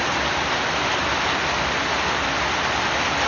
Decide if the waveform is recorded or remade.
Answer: recorded